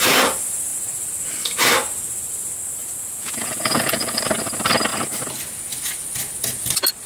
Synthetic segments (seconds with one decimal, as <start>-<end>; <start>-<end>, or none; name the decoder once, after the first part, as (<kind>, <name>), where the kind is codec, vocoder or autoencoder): 2.8-4.2 (vocoder, Vocos)